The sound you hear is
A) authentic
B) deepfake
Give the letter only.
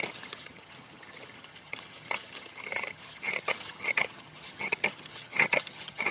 B